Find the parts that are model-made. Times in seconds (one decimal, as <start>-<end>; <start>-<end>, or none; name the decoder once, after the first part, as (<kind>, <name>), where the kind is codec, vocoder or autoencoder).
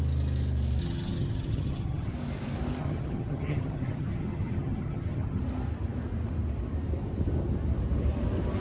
0.8-2.1 (vocoder, HiFi-GAN); 2.8-5.4